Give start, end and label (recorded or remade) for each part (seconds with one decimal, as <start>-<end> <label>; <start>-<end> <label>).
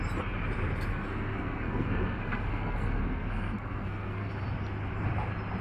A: 0.0-0.9 recorded; 0.9-4.3 remade; 4.3-5.6 recorded